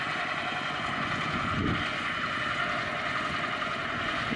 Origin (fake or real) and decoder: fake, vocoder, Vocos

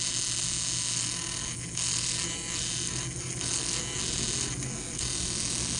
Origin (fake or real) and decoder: real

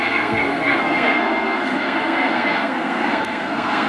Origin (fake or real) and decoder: fake, codec, SNAC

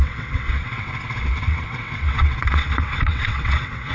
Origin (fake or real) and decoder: fake, vocoder, WaveNeXt